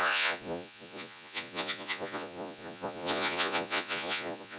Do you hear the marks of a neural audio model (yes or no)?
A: yes